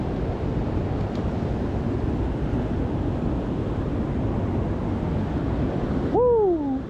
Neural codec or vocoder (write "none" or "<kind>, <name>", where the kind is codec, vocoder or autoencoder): none